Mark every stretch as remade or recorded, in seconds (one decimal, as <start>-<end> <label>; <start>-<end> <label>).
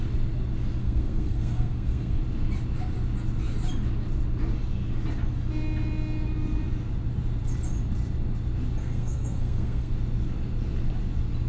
0.0-0.8 recorded; 0.8-2.2 remade; 2.2-8.8 recorded; 8.8-9.9 remade; 9.9-11.5 recorded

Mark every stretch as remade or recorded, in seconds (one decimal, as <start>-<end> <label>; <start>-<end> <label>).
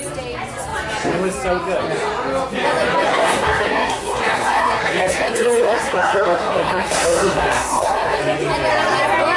0.0-3.1 recorded; 3.1-8.2 remade; 8.2-9.4 recorded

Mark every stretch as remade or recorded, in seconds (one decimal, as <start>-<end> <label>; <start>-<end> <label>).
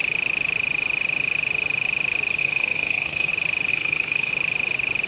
0.0-2.4 recorded; 2.4-3.3 remade; 3.3-3.7 recorded; 3.7-4.3 remade; 4.3-5.1 recorded